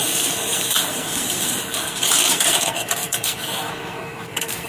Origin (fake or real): fake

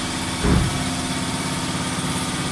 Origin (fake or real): real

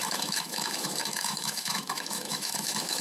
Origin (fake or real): fake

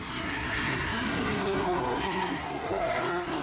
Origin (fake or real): fake